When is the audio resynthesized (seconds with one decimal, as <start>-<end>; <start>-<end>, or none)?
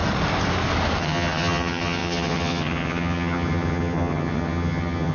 1.0-5.1